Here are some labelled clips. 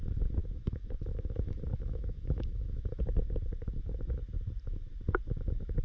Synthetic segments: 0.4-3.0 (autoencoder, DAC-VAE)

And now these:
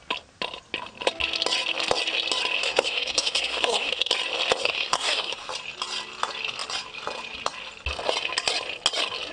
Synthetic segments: 2.6-4.1 (codec, SNAC); 4.6-5.5

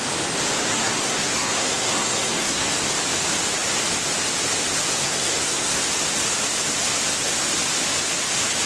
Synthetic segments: 0.6-2.7 (codec, SNAC); 5.0-5.8

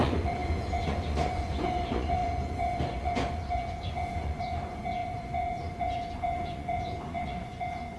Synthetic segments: 0.0-8.0 (vocoder, Vocos)

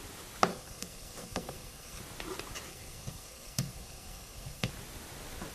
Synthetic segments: 0.5-2.0 (codec, SNAC); 2.7-4.7

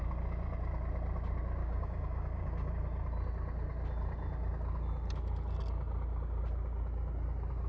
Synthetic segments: 1.6-2.7 (codec, DAC)

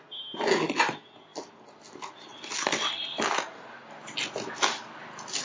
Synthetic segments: none